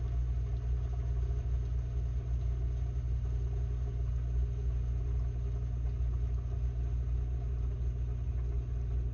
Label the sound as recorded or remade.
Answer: recorded